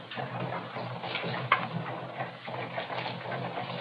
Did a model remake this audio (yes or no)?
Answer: no